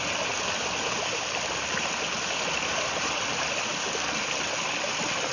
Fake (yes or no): no